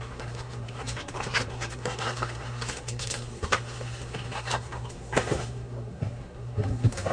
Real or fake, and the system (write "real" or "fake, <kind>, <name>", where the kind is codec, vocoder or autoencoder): fake, codec, SNAC